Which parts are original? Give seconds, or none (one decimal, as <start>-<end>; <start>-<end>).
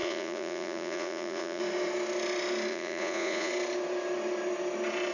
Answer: 1.6-2.7; 3.5-5.1